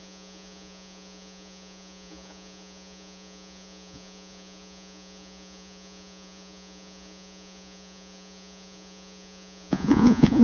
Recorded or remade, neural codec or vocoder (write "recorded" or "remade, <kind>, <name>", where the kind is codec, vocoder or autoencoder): remade, vocoder, Vocos